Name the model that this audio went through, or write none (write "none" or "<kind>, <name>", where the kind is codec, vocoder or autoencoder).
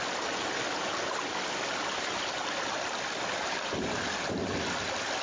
none